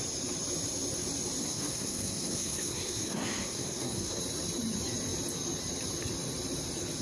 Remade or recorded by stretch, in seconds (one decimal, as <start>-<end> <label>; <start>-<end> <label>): 0.0-1.4 recorded; 1.4-4.2 remade; 4.2-7.0 recorded